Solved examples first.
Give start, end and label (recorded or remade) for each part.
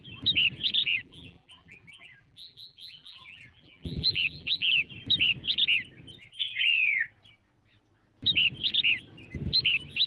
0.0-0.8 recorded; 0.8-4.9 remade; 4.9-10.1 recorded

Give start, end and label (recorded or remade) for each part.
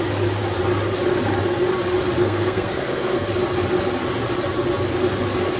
0.0-2.2 recorded; 2.2-3.3 remade; 3.3-5.6 recorded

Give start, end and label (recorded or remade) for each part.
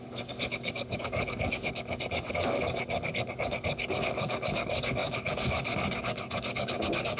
0.0-7.2 remade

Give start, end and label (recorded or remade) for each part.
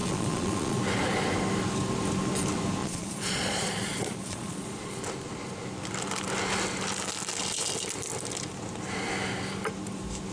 0.0-0.8 remade; 0.8-2.8 recorded; 2.8-5.0 remade; 5.0-10.3 recorded